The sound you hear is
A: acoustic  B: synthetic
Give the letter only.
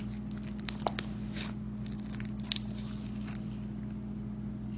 A